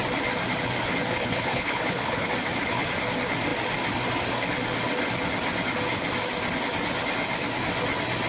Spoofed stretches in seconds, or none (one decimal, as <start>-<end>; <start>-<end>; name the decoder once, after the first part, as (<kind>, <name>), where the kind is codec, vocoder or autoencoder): 1.1-2.3 (codec, HILCodec)

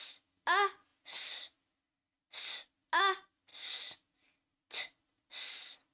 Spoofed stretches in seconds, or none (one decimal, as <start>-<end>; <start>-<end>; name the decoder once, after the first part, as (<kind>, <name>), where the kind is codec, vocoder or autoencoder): none

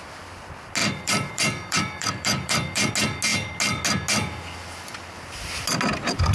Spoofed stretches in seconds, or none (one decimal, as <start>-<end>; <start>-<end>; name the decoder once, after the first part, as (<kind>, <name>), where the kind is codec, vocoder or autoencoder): 0.8-2.9 (vocoder, BigVGAN v2)